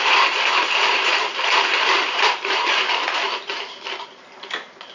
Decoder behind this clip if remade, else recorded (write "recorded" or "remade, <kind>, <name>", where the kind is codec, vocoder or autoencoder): remade, vocoder, BigVGAN v2